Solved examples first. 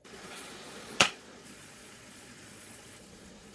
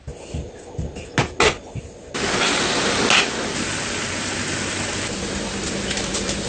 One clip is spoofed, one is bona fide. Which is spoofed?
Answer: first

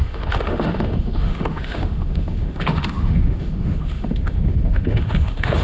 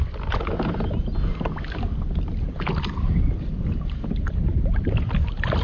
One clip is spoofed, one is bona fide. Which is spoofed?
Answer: first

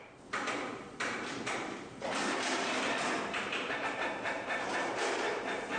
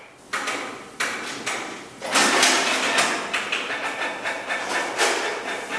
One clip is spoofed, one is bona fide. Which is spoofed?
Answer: first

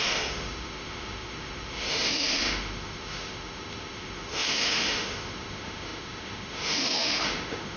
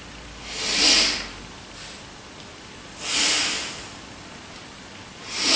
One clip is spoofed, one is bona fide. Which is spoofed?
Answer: first